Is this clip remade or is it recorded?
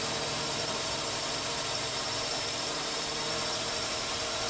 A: remade